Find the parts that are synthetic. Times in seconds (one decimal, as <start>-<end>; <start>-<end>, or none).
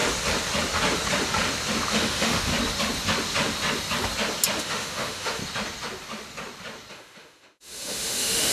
1.9-2.5; 4.6-5.4; 6.9-8.5